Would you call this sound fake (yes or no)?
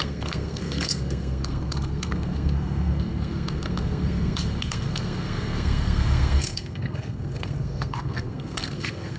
yes